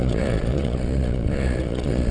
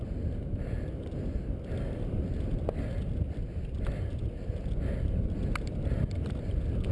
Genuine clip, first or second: second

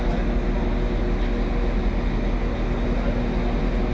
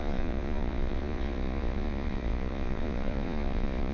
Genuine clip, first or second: first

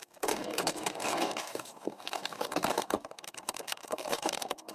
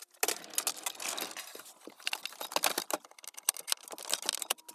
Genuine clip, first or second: second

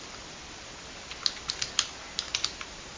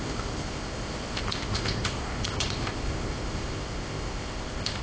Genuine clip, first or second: first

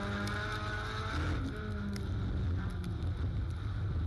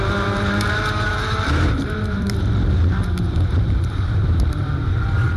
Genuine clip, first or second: first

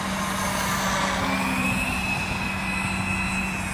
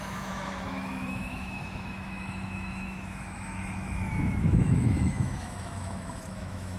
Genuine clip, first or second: first